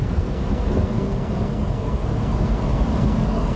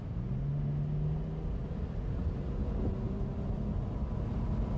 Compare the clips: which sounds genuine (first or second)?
second